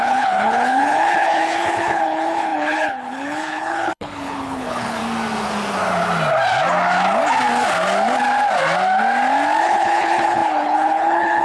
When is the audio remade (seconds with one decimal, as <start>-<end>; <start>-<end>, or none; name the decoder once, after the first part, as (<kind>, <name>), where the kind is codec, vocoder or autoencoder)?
0.0-5.0 (codec, HILCodec); 9.6-11.4